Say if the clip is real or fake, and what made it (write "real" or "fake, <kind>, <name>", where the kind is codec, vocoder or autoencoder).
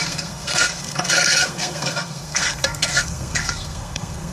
fake, codec, SNAC